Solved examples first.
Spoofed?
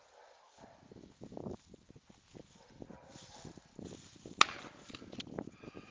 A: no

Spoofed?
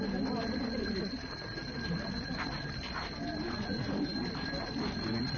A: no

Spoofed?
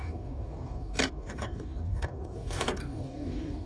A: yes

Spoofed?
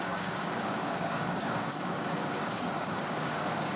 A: yes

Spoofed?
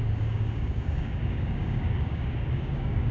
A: yes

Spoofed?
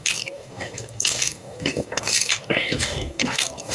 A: yes